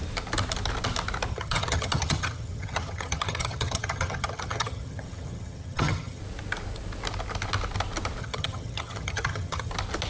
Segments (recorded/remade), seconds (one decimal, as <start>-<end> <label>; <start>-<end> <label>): 0.0-1.3 recorded; 1.3-6.2 remade; 6.2-8.2 recorded; 8.2-9.7 remade; 9.7-10.1 recorded